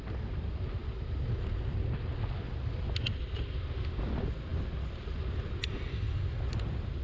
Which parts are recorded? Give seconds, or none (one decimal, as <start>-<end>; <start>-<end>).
0.0-7.0